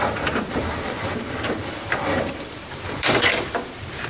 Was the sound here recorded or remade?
remade